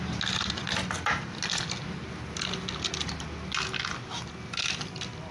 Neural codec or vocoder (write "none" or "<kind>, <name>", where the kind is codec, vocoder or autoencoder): none